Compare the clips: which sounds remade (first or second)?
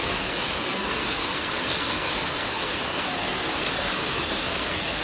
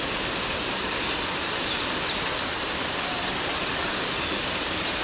first